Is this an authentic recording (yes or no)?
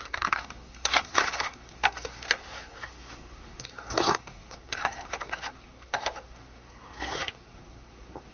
no